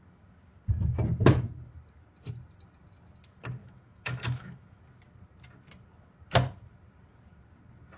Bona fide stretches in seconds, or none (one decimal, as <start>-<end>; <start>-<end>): 0.0-3.6; 4.8-8.0